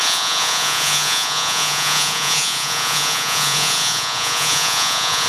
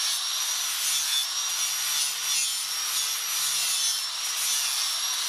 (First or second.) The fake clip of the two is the first